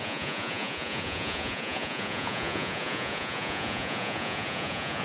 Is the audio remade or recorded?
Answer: remade